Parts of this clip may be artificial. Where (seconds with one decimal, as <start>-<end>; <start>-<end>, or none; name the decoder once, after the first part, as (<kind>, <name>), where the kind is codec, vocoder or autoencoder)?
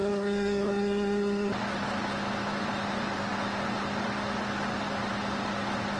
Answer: 0.0-1.5 (codec, SNAC)